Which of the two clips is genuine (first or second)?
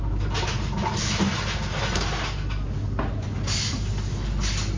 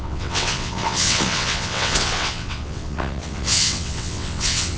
first